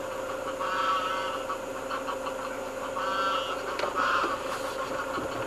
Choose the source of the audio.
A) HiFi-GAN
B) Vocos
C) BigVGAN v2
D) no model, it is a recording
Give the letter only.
D